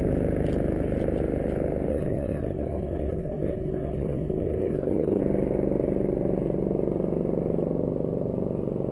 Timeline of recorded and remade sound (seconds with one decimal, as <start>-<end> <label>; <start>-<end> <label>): 0.0-1.9 recorded; 1.9-5.2 remade; 5.2-8.9 recorded